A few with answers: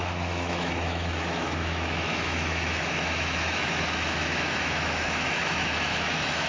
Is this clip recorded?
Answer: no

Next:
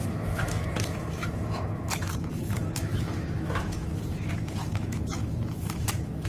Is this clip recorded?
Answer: no